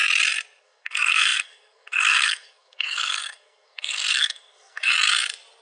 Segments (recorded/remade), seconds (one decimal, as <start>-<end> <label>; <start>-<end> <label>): 0.0-0.6 recorded; 0.6-4.9 remade; 4.9-5.6 recorded